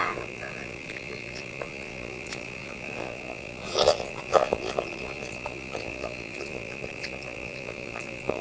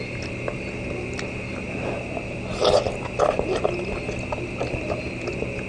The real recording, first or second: second